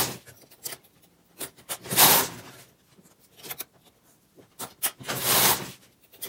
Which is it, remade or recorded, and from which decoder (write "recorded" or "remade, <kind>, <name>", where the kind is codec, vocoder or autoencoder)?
recorded